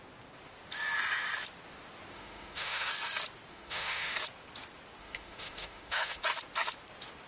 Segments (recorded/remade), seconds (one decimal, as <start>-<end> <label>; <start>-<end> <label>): 0.0-2.1 recorded; 2.1-2.9 remade; 2.9-3.5 recorded; 3.5-4.1 remade; 4.1-5.0 recorded; 5.0-6.2 remade; 6.2-7.3 recorded